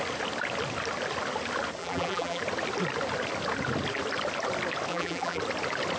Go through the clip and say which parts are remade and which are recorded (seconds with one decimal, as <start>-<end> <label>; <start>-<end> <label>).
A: 0.0-1.8 recorded; 1.8-2.4 remade; 2.4-4.9 recorded; 4.9-5.4 remade; 5.4-6.0 recorded